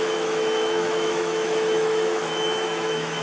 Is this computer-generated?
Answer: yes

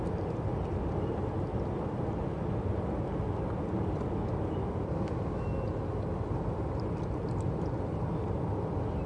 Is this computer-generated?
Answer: no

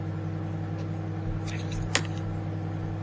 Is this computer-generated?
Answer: no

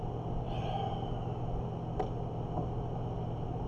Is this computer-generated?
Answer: no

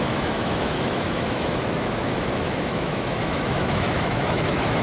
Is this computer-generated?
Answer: yes